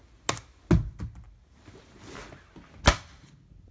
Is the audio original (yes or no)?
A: yes